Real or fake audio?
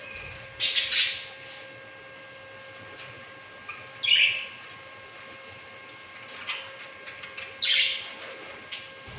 real